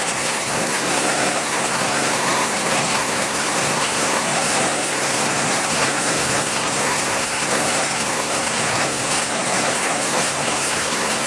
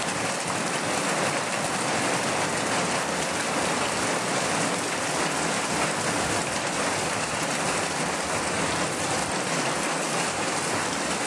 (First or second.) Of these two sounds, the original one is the second